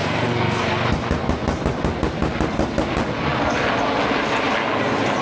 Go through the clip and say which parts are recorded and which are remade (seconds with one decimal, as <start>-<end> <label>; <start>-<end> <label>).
0.0-0.6 remade; 0.6-5.2 recorded